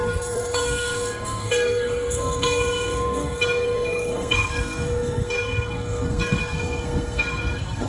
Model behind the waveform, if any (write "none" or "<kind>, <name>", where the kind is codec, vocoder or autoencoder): codec, SNAC